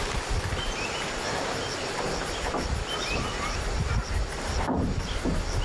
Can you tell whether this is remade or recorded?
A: recorded